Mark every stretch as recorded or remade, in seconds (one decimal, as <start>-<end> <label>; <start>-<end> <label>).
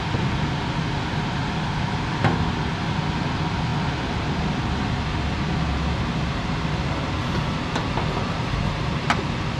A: 0.0-9.6 recorded